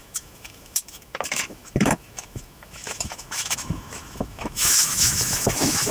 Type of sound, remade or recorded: remade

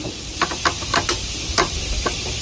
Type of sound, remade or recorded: recorded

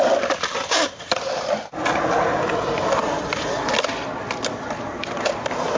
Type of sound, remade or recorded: recorded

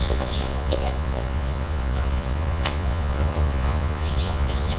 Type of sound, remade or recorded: remade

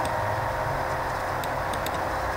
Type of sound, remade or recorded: recorded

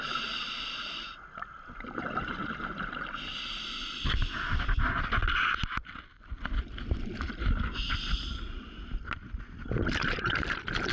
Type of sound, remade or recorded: recorded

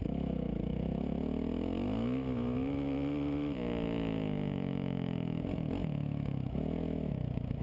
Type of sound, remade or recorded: remade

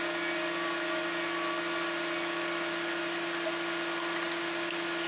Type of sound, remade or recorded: recorded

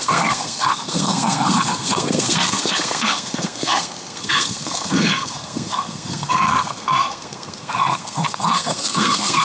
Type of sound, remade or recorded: remade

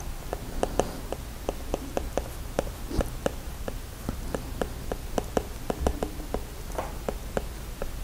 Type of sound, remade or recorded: recorded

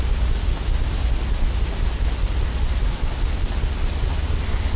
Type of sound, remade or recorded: recorded